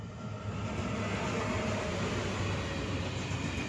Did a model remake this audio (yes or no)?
no